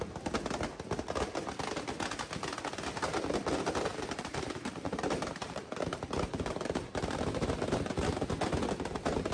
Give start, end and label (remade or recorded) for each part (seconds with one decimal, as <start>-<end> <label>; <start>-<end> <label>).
0.0-3.9 recorded; 3.9-8.3 remade; 8.3-9.3 recorded